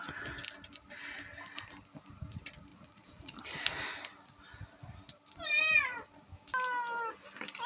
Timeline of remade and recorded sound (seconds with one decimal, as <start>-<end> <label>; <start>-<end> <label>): 0.0-2.7 recorded; 2.7-3.4 remade; 3.4-7.7 recorded